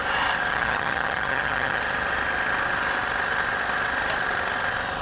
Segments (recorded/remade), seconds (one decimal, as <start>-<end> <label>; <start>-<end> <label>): 0.0-0.5 recorded; 0.5-1.8 remade; 1.8-5.0 recorded